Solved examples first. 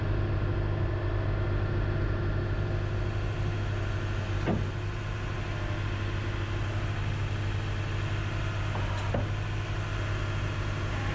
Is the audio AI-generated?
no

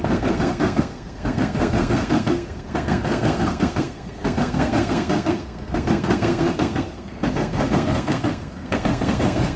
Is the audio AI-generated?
yes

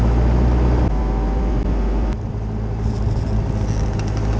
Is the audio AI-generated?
no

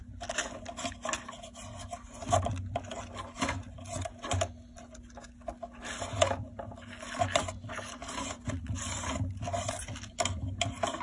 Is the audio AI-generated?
no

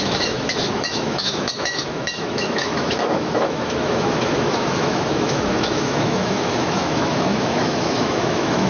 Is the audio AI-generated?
yes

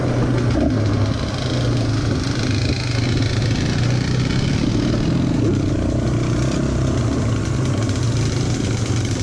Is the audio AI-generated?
no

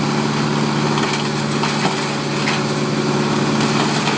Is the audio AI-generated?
no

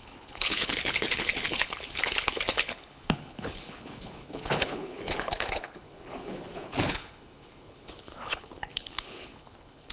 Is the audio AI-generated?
yes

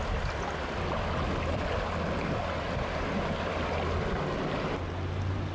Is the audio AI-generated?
no